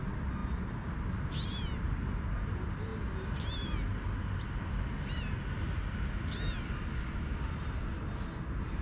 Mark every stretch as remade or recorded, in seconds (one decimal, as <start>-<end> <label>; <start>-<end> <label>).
0.0-8.8 recorded